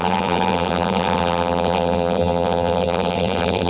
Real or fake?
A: fake